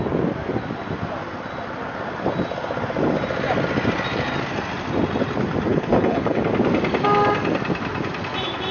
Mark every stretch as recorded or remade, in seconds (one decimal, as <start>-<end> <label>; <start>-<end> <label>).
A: 0.0-5.7 recorded; 5.7-6.4 remade; 6.4-8.7 recorded